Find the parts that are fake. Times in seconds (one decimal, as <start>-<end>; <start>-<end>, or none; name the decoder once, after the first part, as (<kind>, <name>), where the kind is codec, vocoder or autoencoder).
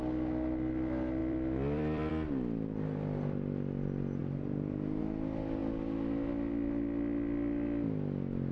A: 1.2-2.1 (vocoder, BigVGAN v2)